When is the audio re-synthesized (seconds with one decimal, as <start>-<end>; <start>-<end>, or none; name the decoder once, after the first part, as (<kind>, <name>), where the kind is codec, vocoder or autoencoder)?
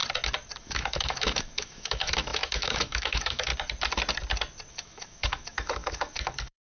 0.6-3.5 (autoencoder, DAC-VAE); 4.7-6.8